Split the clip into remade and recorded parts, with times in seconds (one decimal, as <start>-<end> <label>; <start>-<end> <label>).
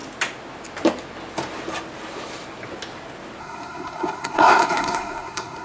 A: 0.0-3.4 recorded; 3.4-5.6 remade